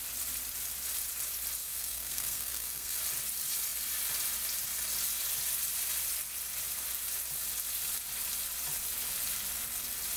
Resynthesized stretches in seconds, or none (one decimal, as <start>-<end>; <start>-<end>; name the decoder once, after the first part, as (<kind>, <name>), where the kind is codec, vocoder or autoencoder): 1.6-3.0 (codec, SNAC)